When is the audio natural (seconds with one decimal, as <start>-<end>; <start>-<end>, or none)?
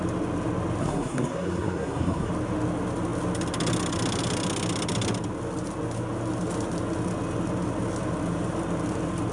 0.0-0.8; 2.3-9.3